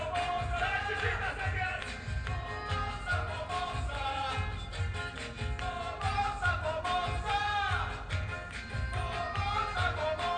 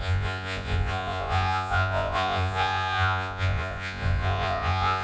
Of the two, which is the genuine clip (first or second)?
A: first